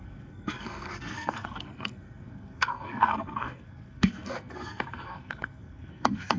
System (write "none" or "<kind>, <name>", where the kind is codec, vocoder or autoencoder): codec, SNAC